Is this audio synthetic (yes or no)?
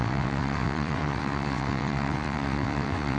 yes